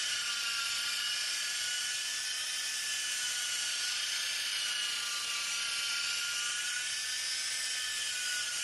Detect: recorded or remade recorded